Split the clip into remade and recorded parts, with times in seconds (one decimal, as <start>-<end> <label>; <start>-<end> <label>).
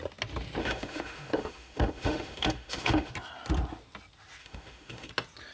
0.0-0.6 recorded; 0.6-3.1 remade; 3.1-4.4 recorded; 4.4-5.1 remade; 5.1-5.5 recorded